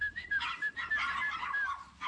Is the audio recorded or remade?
recorded